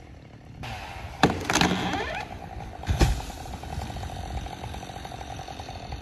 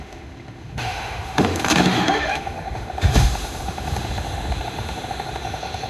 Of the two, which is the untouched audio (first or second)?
first